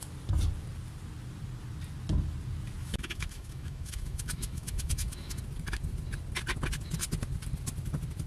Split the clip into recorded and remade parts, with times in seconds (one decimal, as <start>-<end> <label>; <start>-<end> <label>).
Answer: 0.0-2.8 recorded; 2.8-5.4 remade; 5.4-8.3 recorded